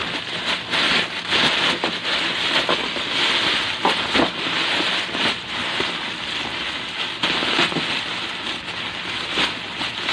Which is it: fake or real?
real